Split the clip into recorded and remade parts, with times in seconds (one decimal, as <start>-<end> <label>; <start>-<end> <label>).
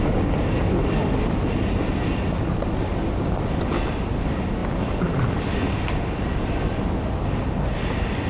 0.0-8.3 recorded